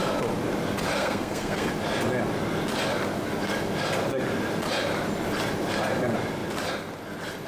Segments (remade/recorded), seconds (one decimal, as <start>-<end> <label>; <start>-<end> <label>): 0.0-1.0 recorded; 1.0-1.7 remade; 1.7-7.5 recorded